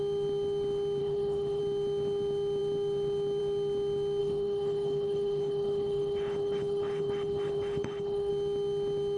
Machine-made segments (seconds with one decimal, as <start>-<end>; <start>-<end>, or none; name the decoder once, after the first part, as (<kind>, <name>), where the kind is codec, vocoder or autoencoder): 1.0-1.6 (codec, HILCodec); 4.2-8.3